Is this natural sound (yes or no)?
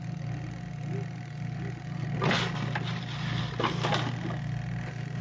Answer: yes